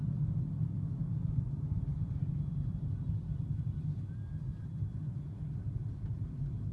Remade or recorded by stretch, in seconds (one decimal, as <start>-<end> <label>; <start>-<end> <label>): 0.0-6.7 recorded